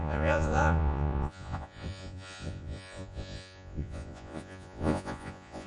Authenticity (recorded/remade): remade